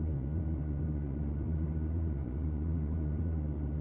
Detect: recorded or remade remade